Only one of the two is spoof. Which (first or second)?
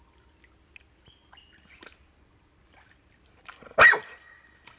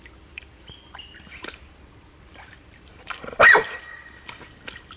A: second